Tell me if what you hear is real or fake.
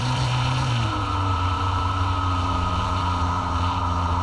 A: fake